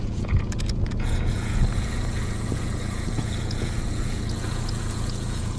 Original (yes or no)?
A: no